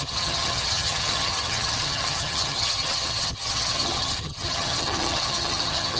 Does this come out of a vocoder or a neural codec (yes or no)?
yes